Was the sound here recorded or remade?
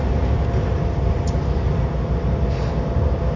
recorded